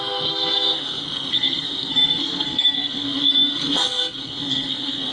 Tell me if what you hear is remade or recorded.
remade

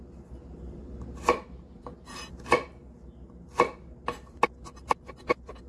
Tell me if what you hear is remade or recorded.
recorded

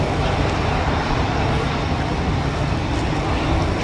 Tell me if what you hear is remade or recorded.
recorded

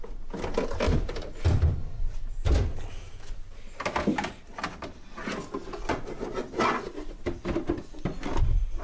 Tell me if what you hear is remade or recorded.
recorded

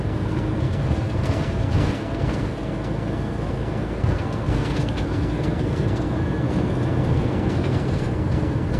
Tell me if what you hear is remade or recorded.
remade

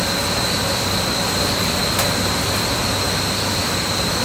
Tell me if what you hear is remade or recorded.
recorded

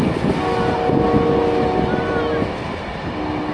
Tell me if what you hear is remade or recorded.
recorded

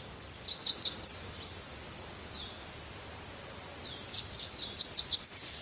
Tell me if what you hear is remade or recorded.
recorded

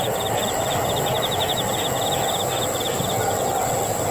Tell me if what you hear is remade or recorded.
recorded